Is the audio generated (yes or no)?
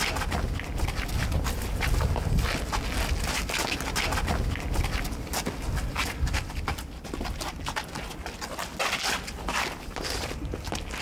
no